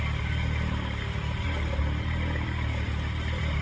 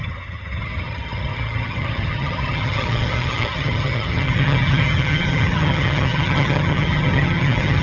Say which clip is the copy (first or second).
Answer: second